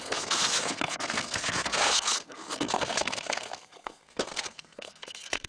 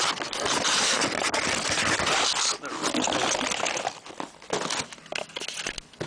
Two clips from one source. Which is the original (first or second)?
second